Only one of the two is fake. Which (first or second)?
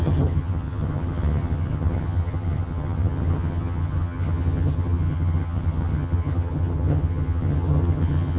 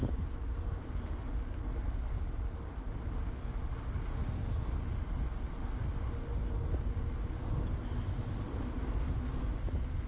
first